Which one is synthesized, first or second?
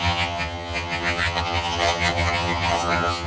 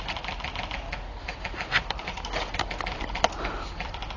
first